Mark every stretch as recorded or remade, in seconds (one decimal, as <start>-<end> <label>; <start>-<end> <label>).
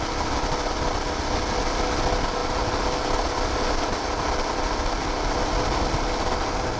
0.0-6.8 recorded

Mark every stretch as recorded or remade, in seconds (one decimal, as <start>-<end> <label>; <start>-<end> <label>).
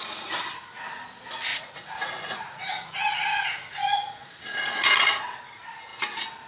0.0-1.5 recorded; 1.5-5.4 remade; 5.4-6.5 recorded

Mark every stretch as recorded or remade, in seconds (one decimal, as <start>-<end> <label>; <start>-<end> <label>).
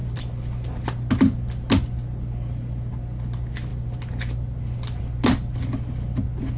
0.0-6.6 recorded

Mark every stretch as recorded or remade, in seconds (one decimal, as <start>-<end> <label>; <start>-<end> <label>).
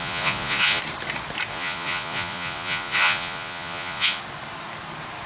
0.0-0.8 remade; 0.8-1.5 recorded; 1.5-4.2 remade; 4.2-5.3 recorded